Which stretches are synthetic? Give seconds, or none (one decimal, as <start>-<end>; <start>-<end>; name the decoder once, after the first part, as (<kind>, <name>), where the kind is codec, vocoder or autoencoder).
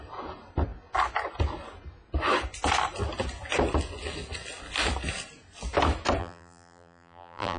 6.2-7.6 (vocoder, BigVGAN v2)